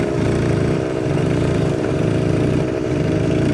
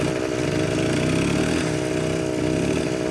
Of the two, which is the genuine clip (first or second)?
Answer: second